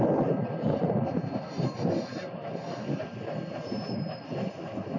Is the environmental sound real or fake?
real